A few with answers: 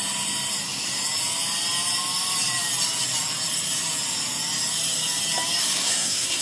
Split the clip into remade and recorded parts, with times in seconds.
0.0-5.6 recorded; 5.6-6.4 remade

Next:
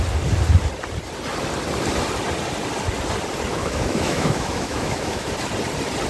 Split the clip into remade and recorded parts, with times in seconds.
0.0-3.5 recorded; 3.5-5.3 remade; 5.3-6.1 recorded

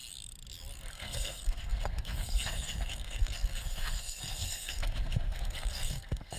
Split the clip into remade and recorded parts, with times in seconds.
0.0-0.9 recorded; 0.9-6.4 remade